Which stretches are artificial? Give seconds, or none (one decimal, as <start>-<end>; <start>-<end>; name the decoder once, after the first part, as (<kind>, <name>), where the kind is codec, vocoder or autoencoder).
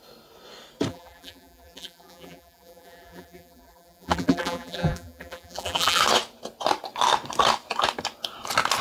0.9-6.0 (vocoder, BigVGAN v2)